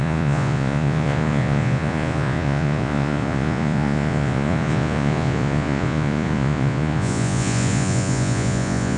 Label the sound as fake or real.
fake